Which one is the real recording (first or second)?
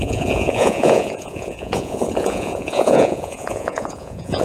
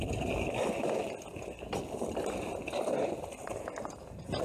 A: second